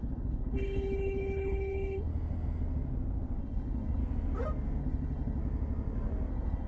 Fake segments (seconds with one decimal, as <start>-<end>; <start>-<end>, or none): 0.0-2.1; 3.4-4.0; 4.8-5.4; 6.3-6.7